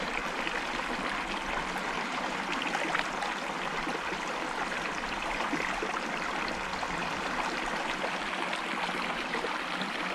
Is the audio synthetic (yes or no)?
no